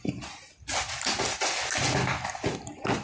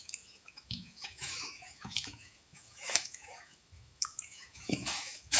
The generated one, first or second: second